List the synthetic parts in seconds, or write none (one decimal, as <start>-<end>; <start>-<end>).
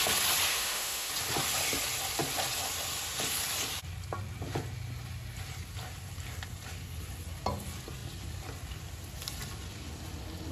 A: 0.5-1.1